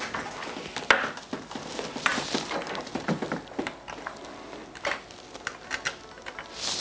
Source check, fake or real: real